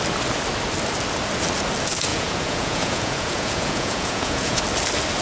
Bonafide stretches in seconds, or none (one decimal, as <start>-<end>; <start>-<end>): 0.0-2.1; 4.6-5.2